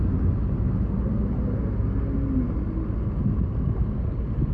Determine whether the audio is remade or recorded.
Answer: recorded